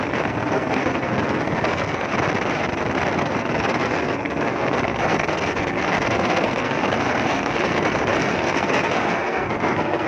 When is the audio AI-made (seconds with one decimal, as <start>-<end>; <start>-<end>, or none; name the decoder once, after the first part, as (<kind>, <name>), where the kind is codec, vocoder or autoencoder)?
0.0-2.1 (codec, SNAC); 3.2-10.1